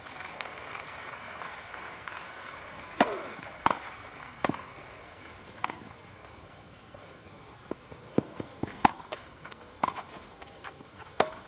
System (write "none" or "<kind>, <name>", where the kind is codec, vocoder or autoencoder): codec, SNAC